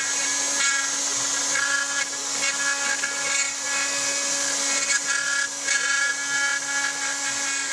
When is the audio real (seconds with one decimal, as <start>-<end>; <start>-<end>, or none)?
0.0-7.7